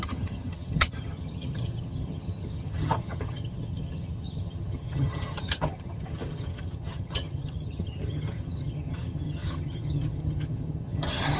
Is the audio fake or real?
fake